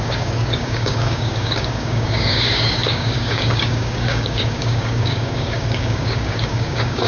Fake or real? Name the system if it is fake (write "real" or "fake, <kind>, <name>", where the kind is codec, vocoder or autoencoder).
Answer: fake, codec, DAC